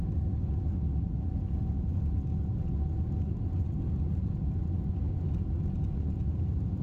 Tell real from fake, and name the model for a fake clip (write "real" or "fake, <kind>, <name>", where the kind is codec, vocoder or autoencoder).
real